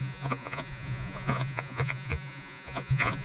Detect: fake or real fake